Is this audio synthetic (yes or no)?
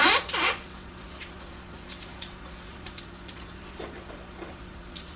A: yes